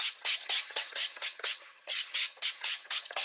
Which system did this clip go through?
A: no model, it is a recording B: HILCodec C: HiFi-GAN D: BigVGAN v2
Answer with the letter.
C